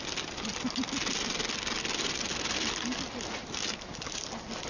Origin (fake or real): real